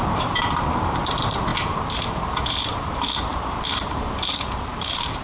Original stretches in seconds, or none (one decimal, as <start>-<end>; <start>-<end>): none